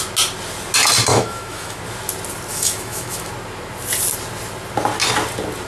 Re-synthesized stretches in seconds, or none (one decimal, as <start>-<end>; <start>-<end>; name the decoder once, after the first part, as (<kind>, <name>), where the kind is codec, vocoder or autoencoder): 1.1-1.8 (autoencoder, DAC-VAE); 2.5-3.3